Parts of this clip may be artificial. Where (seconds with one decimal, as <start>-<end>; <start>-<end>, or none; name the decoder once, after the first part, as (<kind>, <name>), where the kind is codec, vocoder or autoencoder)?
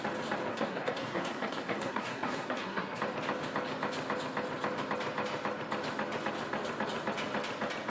0.5-3.0 (codec, SNAC)